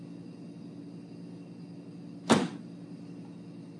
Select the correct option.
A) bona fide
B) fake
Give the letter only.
A